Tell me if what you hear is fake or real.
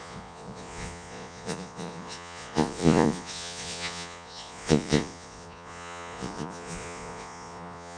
fake